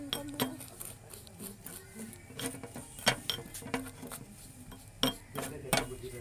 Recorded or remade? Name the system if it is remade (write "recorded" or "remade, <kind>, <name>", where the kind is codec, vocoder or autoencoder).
recorded